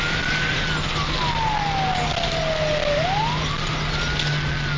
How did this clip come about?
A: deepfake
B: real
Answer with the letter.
B